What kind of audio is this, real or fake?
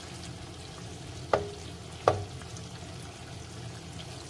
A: real